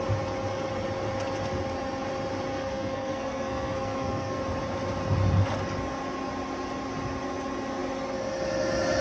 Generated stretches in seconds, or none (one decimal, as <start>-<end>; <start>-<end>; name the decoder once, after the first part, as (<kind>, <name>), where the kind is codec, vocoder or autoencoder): 2.5-4.4 (codec, SNAC)